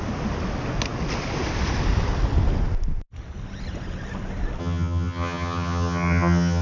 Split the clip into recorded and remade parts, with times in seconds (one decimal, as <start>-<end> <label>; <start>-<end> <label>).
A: 0.0-4.6 recorded; 4.6-6.6 remade